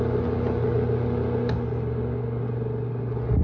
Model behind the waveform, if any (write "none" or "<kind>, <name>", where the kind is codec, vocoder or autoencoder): none